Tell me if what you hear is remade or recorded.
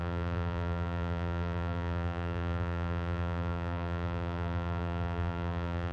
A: remade